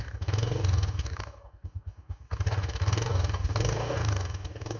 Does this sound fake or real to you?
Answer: fake